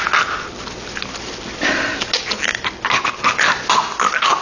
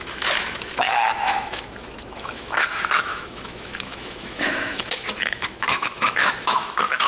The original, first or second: first